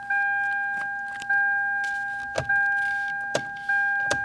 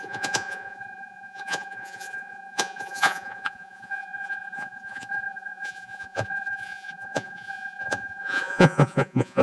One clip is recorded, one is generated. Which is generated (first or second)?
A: second